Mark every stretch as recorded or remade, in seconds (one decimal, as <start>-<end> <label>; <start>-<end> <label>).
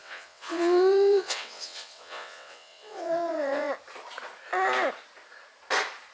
0.0-3.7 remade; 3.7-6.1 recorded